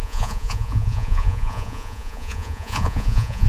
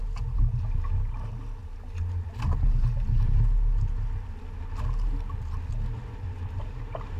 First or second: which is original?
second